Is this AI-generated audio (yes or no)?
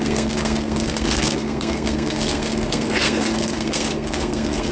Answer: yes